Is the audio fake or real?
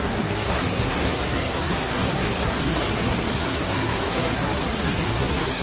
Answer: fake